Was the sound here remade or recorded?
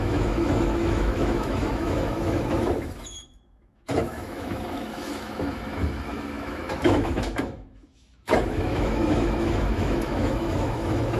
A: remade